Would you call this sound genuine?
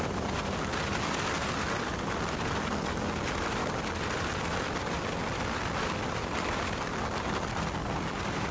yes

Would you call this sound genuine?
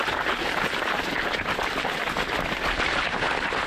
yes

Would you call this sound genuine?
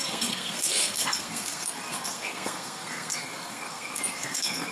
no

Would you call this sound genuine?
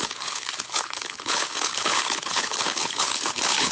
no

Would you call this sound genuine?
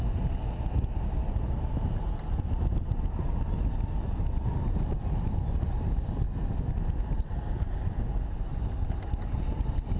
yes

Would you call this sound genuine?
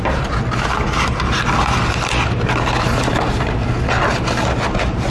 yes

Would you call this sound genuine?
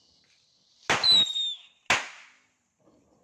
yes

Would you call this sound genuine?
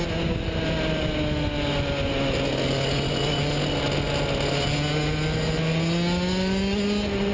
yes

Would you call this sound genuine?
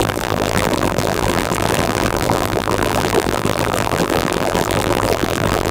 no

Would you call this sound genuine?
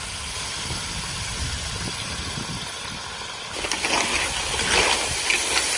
yes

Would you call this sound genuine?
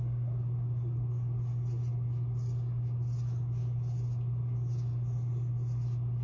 yes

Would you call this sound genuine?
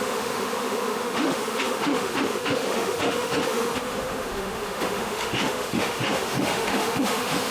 no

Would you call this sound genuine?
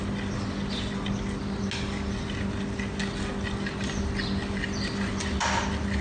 yes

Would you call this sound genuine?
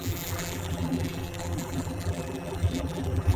no